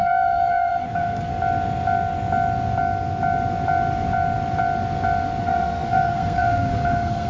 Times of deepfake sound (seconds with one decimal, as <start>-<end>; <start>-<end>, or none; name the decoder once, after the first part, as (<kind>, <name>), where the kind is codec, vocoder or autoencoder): 0.0-1.3 (codec, SNAC); 5.4-7.3